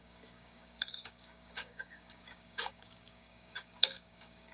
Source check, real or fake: fake